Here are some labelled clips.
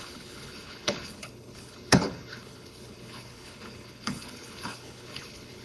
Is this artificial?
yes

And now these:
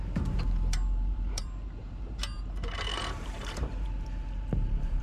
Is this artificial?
yes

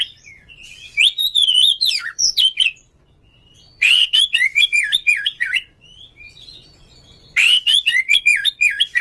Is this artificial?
yes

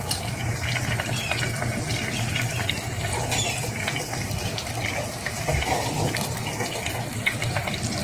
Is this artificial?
no